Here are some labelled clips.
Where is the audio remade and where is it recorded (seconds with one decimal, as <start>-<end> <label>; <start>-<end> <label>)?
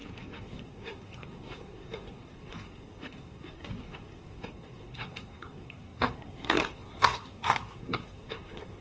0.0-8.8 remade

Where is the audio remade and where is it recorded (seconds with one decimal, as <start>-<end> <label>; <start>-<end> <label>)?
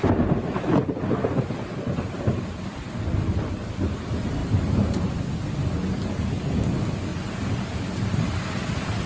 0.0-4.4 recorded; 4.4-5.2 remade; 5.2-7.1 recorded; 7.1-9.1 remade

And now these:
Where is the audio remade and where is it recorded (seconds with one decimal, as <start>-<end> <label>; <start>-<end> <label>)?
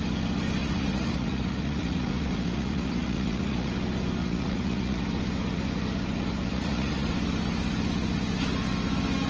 0.0-0.6 recorded; 0.6-3.7 remade; 3.7-4.2 recorded; 4.2-5.0 remade; 5.0-6.5 recorded; 6.5-7.1 remade; 7.1-9.3 recorded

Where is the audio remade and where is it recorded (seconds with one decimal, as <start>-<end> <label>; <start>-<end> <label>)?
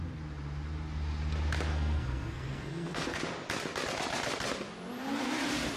0.0-1.7 recorded; 1.7-3.2 remade; 3.2-5.8 recorded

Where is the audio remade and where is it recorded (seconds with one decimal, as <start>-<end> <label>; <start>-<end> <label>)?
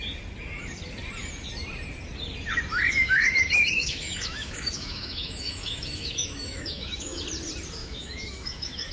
0.0-2.7 recorded; 2.7-7.2 remade; 7.2-7.8 recorded; 7.8-8.9 remade